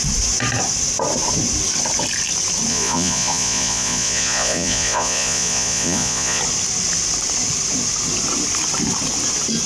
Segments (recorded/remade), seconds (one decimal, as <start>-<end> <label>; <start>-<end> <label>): 0.0-2.7 recorded; 2.7-6.4 remade; 6.4-9.7 recorded